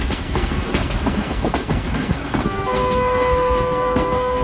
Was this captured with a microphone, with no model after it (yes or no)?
no